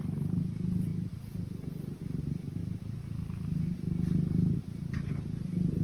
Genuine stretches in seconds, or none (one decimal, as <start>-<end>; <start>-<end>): 0.0-5.8